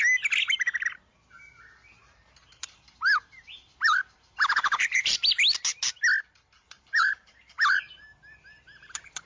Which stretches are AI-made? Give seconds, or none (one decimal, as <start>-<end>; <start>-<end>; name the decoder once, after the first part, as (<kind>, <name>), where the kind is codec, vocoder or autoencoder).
2.0-5.4 (vocoder, BigVGAN v2); 6.6-9.3